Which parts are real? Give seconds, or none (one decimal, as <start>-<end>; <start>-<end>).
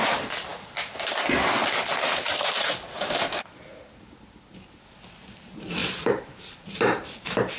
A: 0.0-5.8